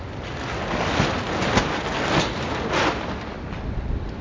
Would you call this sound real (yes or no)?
yes